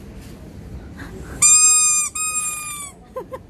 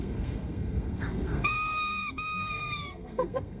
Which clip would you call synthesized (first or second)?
second